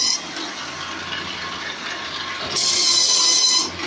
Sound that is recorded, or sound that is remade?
recorded